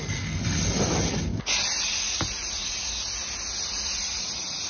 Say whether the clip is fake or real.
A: real